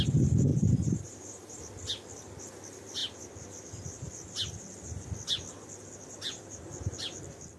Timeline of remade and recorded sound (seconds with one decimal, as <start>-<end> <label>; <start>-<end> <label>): 0.0-0.5 recorded; 0.5-1.6 remade; 1.6-7.6 recorded